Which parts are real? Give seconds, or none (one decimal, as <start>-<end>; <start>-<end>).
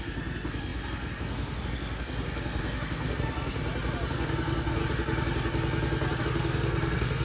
3.6-4.1; 4.8-6.2